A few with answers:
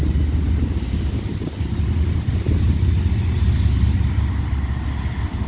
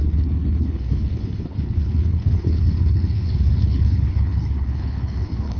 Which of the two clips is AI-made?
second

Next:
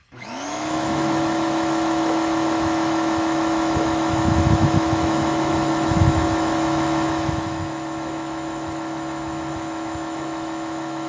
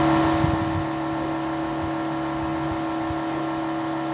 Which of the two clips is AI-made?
first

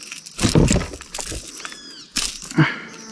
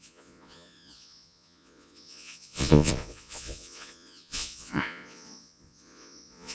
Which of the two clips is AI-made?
second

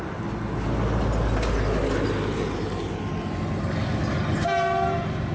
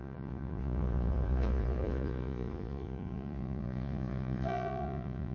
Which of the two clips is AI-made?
second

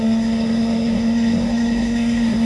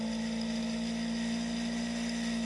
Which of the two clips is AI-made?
first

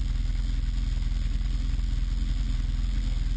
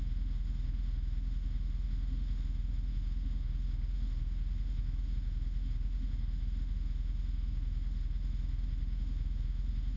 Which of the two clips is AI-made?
second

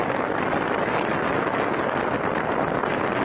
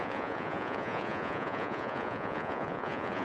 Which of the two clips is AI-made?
second